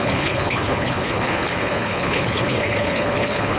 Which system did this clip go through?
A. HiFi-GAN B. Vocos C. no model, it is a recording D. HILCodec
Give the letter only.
D